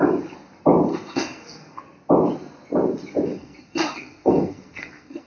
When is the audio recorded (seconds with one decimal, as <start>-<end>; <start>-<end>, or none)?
0.0-0.9; 1.8-3.3